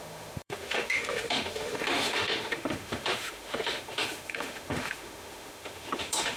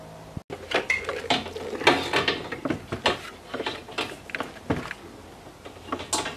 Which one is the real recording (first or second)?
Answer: second